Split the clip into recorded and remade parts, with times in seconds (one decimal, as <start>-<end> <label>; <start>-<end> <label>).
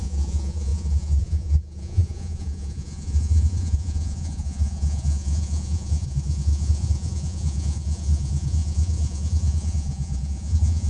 0.0-10.9 remade